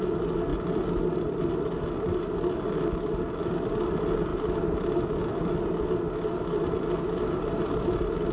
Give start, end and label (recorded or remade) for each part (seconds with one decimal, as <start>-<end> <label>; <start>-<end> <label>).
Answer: 0.0-8.3 recorded